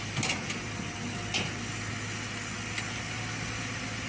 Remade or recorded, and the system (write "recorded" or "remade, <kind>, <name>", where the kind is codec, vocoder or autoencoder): recorded